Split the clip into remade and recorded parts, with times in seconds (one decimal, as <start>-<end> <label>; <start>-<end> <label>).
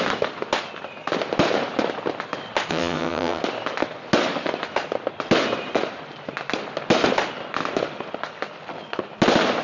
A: 0.0-2.7 recorded; 2.7-3.4 remade; 3.4-9.6 recorded